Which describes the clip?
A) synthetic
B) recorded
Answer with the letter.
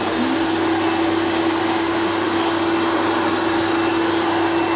B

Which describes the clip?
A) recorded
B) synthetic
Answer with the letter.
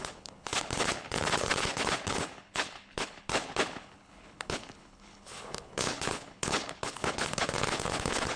B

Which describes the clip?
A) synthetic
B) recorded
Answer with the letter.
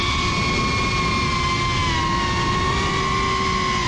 B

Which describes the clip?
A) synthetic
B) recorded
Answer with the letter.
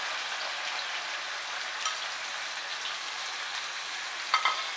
B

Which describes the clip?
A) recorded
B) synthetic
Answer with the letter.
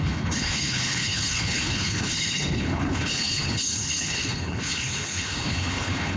B